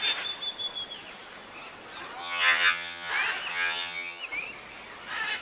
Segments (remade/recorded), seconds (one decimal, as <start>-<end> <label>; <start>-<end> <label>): 0.0-2.2 recorded; 2.2-3.1 remade; 3.1-3.5 recorded; 3.5-4.2 remade; 4.2-5.4 recorded